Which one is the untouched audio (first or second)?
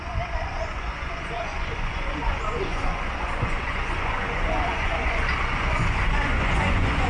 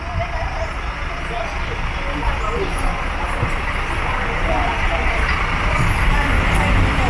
second